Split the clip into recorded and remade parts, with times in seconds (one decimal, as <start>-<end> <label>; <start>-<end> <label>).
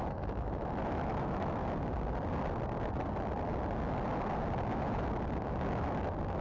0.0-1.6 remade; 1.6-5.4 recorded; 5.4-6.4 remade